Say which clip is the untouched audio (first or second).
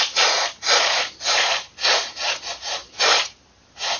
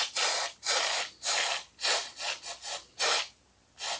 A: second